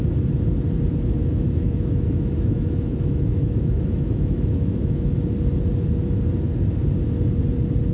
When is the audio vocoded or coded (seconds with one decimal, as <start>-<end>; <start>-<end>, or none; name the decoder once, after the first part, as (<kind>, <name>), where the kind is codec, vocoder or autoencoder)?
1.2-5.1 (autoencoder, DAC-VAE)